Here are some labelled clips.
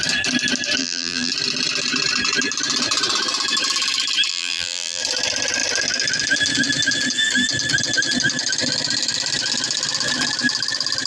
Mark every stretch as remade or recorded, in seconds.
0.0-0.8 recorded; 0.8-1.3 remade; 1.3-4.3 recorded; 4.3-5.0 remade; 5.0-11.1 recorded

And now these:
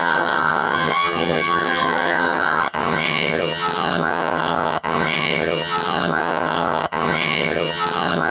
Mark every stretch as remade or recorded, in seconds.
0.0-8.3 remade

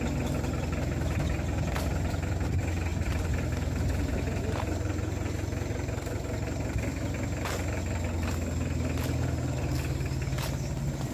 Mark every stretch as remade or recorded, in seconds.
0.0-11.1 recorded

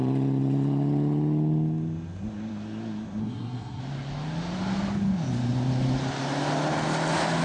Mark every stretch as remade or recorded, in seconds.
0.0-3.2 recorded; 3.2-3.8 remade; 3.8-7.4 recorded

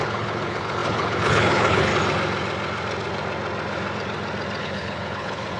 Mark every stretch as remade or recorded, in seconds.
0.0-1.9 remade; 1.9-4.6 recorded; 4.6-5.6 remade

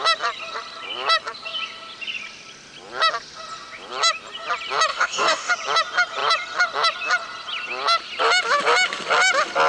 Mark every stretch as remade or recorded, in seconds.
0.0-4.9 recorded; 4.9-5.5 remade; 5.5-9.7 recorded

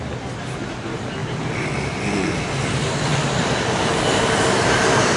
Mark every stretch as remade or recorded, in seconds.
0.0-5.2 recorded

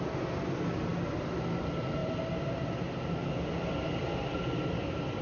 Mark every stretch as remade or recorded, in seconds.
0.0-5.2 recorded